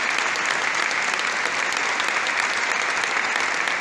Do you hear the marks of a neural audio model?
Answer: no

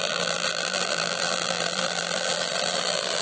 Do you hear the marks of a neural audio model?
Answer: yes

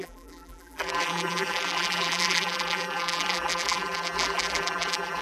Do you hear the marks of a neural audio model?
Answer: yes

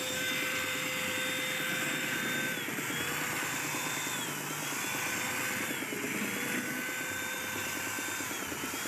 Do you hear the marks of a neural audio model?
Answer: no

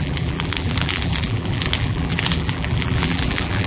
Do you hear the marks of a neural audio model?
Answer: yes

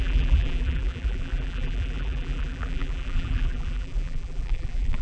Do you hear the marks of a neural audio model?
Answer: yes